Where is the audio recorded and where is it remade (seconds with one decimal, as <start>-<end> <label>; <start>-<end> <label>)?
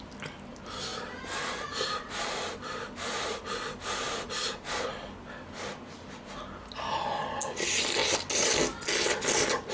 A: 0.0-0.9 recorded; 0.9-4.8 remade; 4.8-9.7 recorded